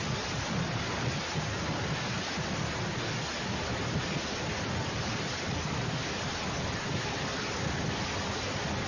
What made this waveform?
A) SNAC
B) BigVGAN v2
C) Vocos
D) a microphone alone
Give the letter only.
D